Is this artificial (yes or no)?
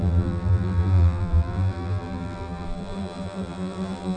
yes